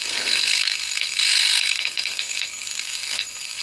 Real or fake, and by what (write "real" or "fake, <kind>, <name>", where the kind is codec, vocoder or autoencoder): fake, codec, SNAC